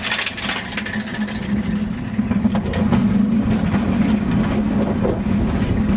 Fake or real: real